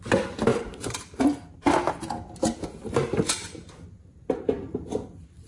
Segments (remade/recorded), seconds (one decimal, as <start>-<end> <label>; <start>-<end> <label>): 0.0-0.5 recorded; 0.5-1.4 remade; 1.4-5.5 recorded